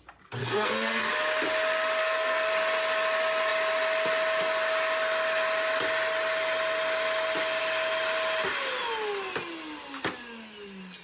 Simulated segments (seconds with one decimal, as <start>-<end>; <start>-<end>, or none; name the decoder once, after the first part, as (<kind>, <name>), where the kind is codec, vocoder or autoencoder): 0.4-1.1 (codec, SNAC); 2.0-2.5